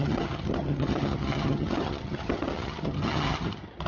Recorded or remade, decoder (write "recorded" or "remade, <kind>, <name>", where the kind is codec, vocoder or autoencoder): remade, vocoder, HiFi-GAN